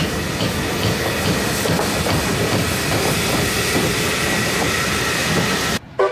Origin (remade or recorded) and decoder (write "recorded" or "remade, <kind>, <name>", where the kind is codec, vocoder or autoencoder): recorded